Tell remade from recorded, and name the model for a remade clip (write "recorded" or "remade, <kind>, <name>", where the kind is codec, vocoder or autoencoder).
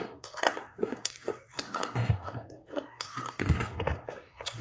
remade, codec, SNAC